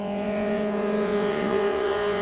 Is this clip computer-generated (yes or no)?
yes